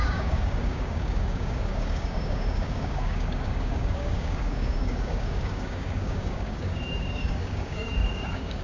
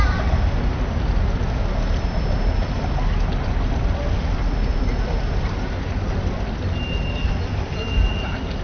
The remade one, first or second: first